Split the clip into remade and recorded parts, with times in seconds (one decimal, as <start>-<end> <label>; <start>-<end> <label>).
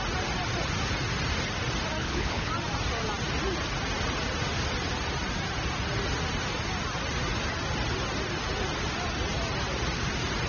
0.0-2.0 recorded; 2.0-2.5 remade; 2.5-10.5 recorded